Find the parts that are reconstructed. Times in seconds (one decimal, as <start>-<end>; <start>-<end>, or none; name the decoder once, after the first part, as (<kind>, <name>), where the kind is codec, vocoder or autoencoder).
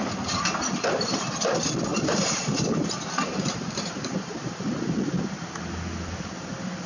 1.9-4.6 (vocoder, BigVGAN v2)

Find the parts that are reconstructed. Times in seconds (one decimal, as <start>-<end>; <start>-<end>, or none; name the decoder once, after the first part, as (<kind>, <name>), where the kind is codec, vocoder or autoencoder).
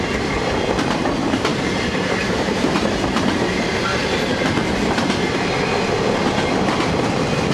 1.5-3.6 (vocoder, BigVGAN v2)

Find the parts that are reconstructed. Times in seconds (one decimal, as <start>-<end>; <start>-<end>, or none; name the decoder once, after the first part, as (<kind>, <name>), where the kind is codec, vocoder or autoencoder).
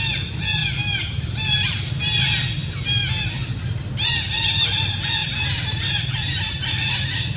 none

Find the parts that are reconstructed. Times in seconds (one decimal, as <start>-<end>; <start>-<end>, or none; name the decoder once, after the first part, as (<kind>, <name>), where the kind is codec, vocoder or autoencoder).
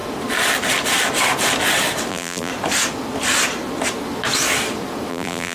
2.1-2.5 (vocoder, BigVGAN v2); 5.1-5.5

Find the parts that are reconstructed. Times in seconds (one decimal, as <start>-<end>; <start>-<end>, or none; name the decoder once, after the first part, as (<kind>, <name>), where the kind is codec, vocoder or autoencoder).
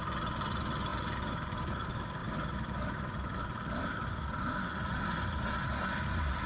none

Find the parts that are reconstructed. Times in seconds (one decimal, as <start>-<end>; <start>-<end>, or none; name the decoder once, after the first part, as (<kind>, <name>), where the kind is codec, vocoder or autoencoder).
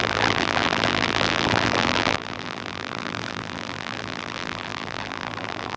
0.0-5.8 (vocoder, BigVGAN v2)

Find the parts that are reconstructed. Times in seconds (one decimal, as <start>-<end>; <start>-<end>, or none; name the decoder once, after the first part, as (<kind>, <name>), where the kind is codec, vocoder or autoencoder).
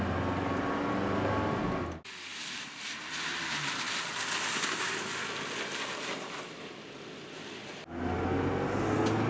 2.3-3.7 (vocoder, BigVGAN v2)